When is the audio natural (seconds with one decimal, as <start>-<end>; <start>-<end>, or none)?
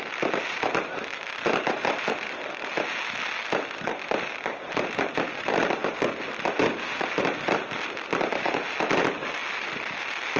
0.0-10.4